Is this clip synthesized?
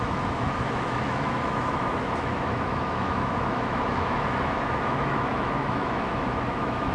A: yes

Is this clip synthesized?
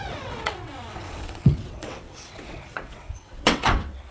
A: yes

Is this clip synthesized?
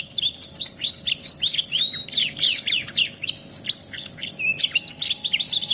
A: no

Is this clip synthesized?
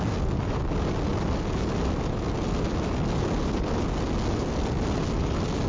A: no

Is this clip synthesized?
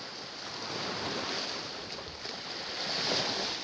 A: no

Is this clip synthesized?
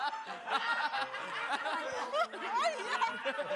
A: no